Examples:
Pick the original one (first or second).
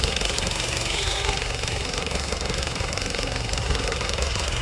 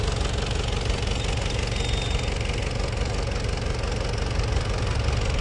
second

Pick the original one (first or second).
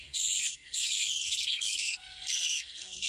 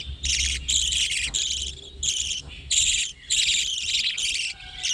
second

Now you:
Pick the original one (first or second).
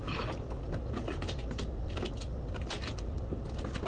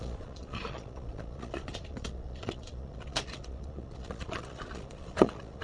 first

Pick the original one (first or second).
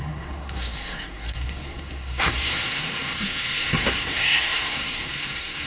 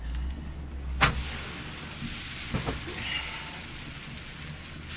second